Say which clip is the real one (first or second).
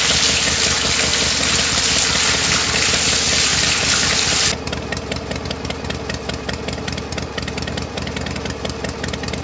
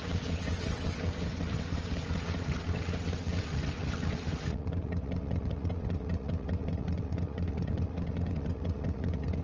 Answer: first